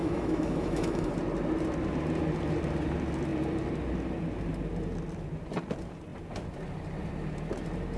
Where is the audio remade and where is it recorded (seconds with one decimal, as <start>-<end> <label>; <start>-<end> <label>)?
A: 0.0-1.1 remade; 1.1-8.0 recorded